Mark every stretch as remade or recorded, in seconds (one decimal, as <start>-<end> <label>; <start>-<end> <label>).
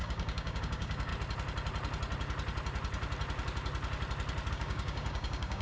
0.0-1.1 remade; 1.1-4.5 recorded; 4.5-5.6 remade